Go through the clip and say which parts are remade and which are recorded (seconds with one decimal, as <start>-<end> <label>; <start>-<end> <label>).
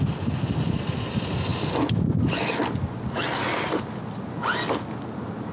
0.0-5.5 recorded